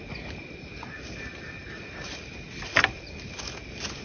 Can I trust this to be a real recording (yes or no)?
yes